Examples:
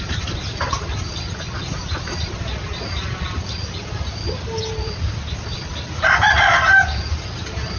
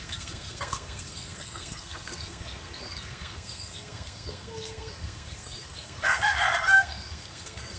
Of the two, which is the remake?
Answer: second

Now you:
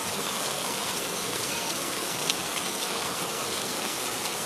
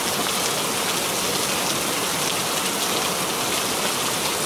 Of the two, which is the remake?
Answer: first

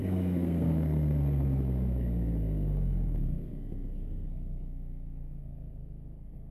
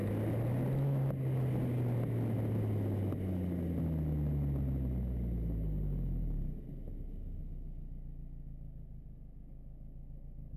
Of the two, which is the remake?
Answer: first